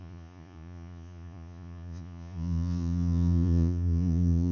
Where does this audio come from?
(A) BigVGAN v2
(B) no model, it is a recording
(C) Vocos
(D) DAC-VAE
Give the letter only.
C